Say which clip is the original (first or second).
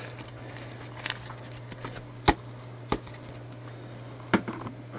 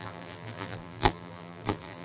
first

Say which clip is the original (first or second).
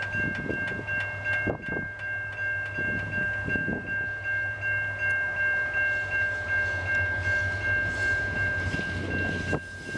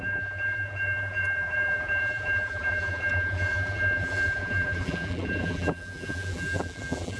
first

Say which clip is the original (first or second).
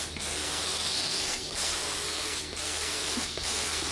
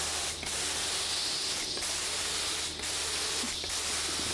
second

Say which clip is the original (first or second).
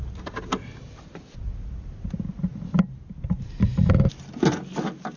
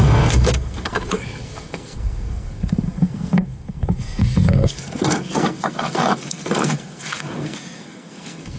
first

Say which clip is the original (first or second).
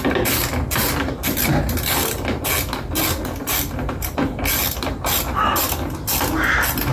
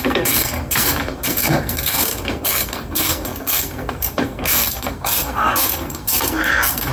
first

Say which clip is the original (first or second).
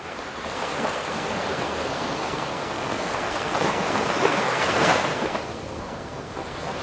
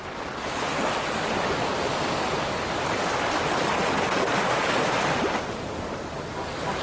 second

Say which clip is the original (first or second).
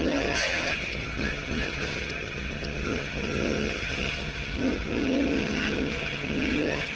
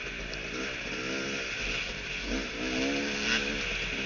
second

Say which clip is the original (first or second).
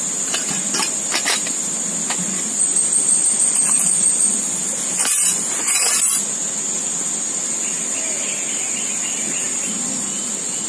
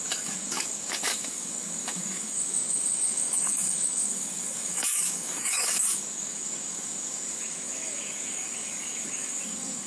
first